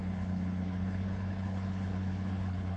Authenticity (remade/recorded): remade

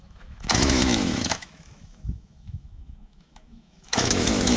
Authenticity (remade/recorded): remade